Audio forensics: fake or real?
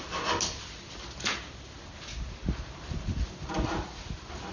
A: real